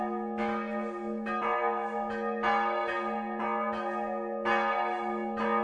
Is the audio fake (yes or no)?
no